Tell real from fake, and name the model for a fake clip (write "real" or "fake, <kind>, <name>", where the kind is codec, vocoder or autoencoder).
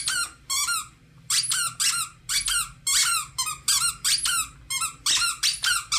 real